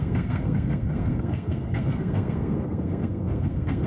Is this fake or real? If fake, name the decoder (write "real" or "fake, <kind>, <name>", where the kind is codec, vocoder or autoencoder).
fake, codec, SNAC